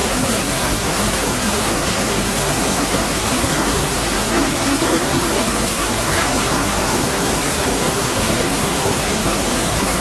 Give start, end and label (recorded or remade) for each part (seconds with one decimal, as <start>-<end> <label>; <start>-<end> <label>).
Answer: 0.0-10.0 remade